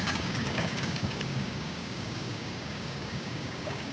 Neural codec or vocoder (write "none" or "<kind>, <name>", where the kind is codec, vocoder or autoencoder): codec, DAC